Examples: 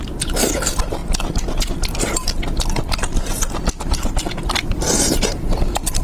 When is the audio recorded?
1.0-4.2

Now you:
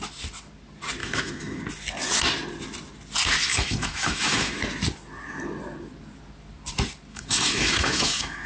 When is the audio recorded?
0.0-1.0; 1.6-3.5; 4.6-7.1

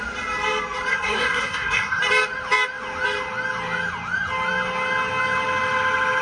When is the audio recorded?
0.0-0.9; 2.0-6.2